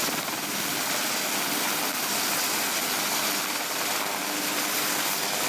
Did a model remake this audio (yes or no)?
no